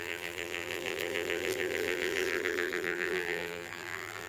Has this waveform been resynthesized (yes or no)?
yes